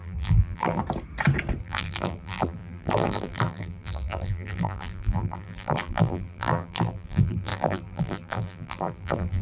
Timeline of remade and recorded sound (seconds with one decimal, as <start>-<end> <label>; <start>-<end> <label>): 0.0-0.8 remade; 0.8-1.6 recorded; 1.6-9.4 remade